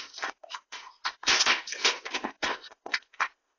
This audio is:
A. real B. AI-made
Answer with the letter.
B